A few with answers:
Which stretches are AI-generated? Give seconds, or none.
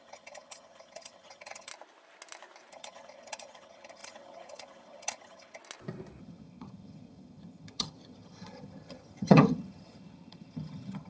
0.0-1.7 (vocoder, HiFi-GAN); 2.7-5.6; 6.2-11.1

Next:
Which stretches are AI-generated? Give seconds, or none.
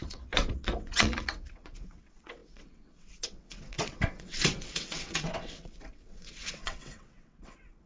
0.0-7.9 (vocoder, WaveNeXt)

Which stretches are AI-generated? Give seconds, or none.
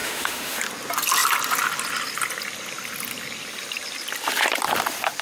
0.0-0.6 (autoencoder, DAC-VAE)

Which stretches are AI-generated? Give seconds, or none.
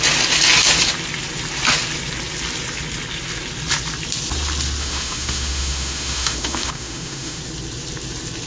4.8-7.4 (autoencoder, DAC-VAE)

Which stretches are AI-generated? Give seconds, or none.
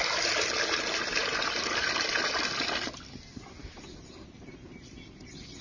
none